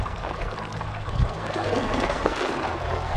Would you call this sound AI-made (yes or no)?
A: yes